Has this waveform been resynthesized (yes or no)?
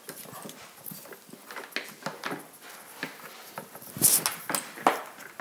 no